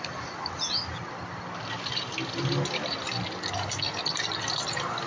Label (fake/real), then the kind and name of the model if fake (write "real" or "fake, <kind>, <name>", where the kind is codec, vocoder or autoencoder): real